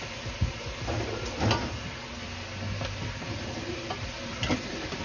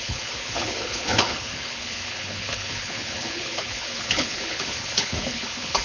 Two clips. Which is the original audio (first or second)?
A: first